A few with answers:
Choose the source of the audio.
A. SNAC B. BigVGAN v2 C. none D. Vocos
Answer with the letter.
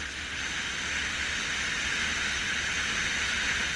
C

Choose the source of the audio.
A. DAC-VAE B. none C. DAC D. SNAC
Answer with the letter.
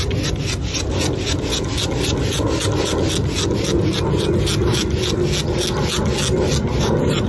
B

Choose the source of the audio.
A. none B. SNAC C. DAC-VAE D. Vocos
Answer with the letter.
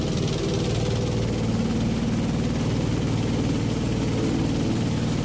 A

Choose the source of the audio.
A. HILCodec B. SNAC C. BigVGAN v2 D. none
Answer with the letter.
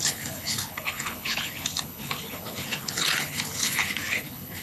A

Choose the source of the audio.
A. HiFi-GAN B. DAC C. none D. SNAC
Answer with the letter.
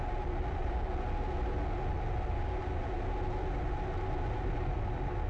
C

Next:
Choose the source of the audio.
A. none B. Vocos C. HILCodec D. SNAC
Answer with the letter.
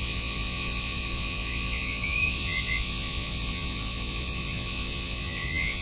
B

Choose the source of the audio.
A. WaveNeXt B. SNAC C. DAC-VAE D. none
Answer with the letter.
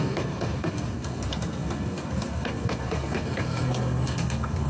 B